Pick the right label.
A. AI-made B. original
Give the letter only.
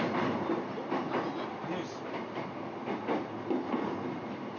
B